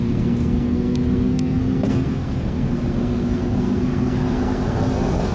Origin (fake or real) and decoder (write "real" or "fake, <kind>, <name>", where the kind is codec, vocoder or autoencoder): fake, codec, SNAC